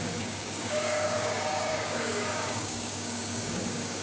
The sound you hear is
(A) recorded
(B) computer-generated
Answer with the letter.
B